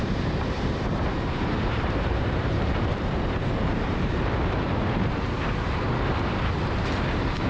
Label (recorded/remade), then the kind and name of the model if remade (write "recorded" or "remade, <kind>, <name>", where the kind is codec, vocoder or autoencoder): remade, vocoder, BigVGAN v2